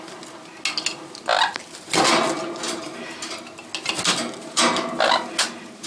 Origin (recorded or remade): recorded